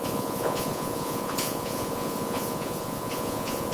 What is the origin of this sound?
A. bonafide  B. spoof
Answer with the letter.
B